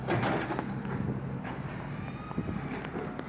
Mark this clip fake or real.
real